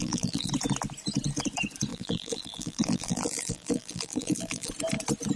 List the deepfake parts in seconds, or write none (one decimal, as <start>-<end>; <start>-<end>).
0.0-0.5; 1.9-4.7